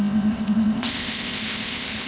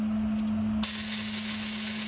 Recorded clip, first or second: second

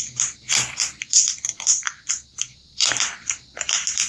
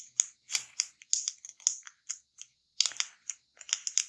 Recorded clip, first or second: second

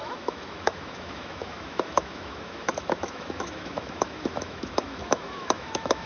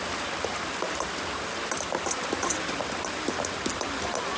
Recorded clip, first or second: second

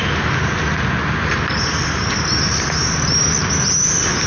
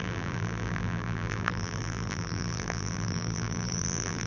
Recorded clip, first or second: first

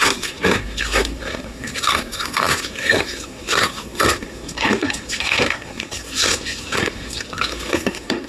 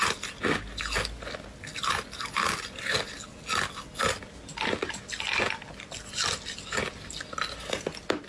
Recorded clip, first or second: second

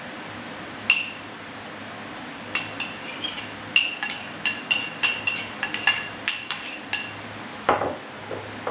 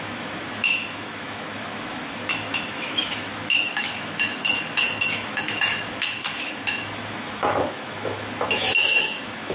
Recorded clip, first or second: first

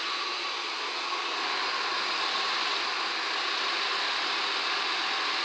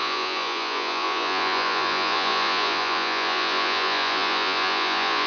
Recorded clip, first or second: first